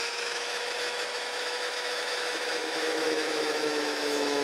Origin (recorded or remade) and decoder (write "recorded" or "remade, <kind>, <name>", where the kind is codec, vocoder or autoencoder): remade, autoencoder, DAC-VAE